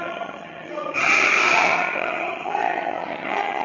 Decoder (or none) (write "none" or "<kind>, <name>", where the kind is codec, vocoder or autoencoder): vocoder, HiFi-GAN